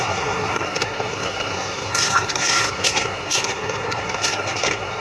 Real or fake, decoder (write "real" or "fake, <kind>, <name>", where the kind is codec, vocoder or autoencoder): fake, codec, SNAC